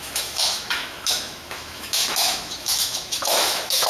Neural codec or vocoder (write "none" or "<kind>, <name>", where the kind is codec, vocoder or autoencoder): autoencoder, DAC-VAE